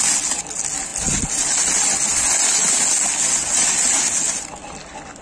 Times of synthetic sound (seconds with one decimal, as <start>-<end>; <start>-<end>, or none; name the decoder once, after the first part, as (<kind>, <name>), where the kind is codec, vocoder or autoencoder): none